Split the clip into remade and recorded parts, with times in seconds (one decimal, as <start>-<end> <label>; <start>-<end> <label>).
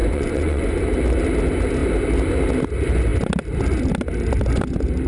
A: 0.0-0.8 remade; 0.8-5.1 recorded